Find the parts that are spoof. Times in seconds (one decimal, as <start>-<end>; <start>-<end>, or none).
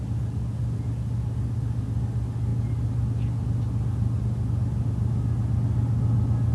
none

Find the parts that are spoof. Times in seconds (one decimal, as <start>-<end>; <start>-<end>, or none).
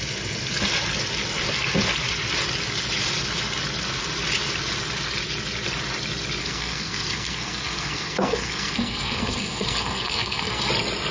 6.4-10.7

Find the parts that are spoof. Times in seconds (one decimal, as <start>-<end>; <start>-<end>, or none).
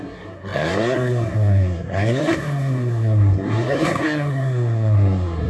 0.0-5.5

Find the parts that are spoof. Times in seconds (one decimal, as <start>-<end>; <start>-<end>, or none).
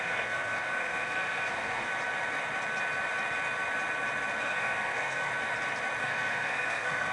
0.0-1.9; 4.4-5.3; 6.0-7.1